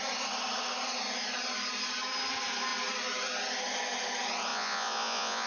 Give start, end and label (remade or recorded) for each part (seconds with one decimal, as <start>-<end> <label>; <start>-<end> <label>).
0.0-4.5 recorded; 4.5-5.5 remade